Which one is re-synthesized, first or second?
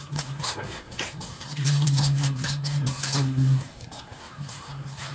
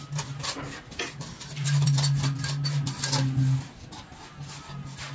first